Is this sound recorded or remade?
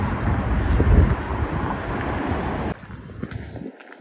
recorded